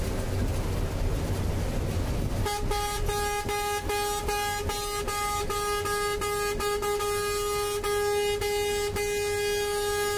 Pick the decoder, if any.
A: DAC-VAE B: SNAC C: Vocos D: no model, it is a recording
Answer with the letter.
D